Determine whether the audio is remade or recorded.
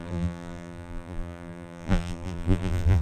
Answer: remade